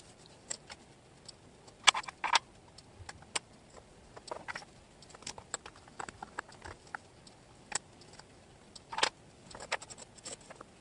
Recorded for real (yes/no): yes